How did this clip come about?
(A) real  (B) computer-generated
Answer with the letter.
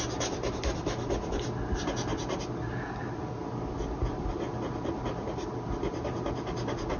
A